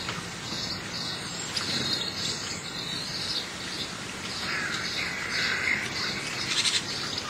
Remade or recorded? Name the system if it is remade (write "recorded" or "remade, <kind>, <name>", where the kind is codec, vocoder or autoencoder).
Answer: recorded